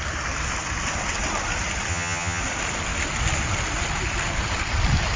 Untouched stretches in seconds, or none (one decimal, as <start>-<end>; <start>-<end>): 0.0-1.9; 2.4-5.2